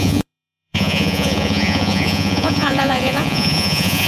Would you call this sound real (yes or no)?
no